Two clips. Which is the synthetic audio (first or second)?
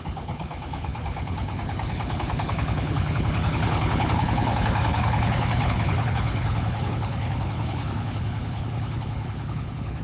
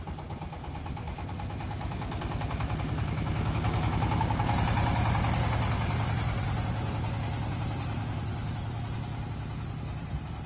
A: first